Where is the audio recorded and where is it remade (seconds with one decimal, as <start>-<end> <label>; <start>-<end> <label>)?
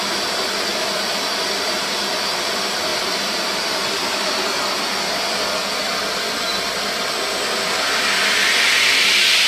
0.0-0.7 recorded; 0.7-1.3 remade; 1.3-2.9 recorded; 2.9-8.0 remade; 8.0-9.5 recorded